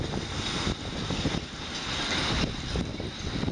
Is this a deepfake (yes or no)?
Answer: no